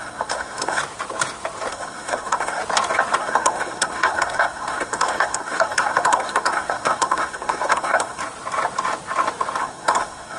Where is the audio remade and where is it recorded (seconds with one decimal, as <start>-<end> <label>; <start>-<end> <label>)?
0.0-0.8 remade; 0.8-1.7 recorded; 1.7-2.6 remade; 2.6-3.2 recorded; 3.2-8.2 remade; 8.2-9.6 recorded; 9.6-10.4 remade

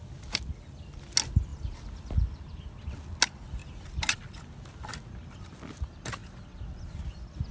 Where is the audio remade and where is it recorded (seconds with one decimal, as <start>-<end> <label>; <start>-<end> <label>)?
0.0-7.5 recorded

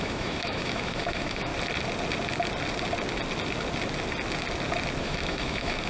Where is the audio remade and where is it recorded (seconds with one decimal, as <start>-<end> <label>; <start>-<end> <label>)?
0.0-1.5 remade; 1.5-5.0 recorded; 5.0-5.9 remade

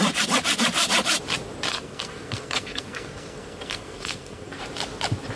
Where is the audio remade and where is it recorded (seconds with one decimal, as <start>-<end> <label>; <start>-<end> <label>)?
0.0-1.7 recorded; 1.7-4.6 remade; 4.6-5.4 recorded

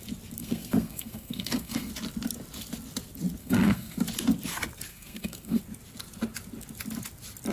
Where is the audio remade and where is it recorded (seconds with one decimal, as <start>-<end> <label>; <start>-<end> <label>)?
0.0-0.4 recorded; 0.4-1.9 remade; 1.9-3.4 recorded; 3.4-4.0 remade; 4.0-4.9 recorded; 4.9-5.6 remade; 5.6-7.5 recorded